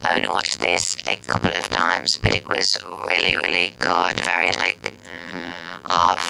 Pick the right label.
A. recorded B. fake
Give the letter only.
B